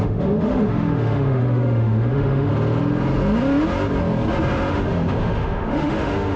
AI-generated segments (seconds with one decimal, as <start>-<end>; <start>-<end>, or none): 0.0-2.5; 4.7-6.4